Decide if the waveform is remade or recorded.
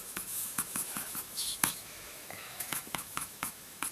remade